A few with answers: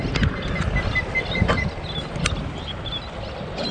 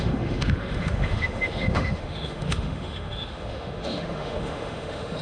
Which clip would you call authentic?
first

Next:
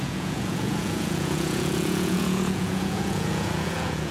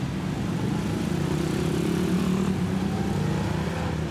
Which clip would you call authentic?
second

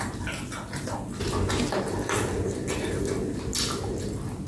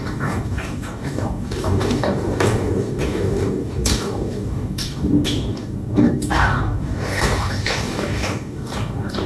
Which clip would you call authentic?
first